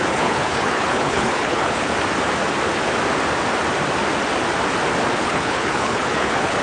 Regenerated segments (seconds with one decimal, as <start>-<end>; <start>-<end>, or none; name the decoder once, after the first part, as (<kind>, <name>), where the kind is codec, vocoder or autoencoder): 0.0-1.9 (codec, HILCodec); 5.1-6.6